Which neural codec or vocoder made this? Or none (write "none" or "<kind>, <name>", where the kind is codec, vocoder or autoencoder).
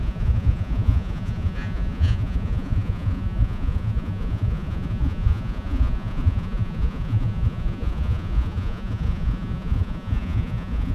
vocoder, Vocos